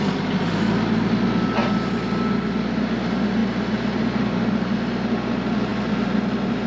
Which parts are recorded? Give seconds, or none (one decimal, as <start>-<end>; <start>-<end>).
0.0-6.7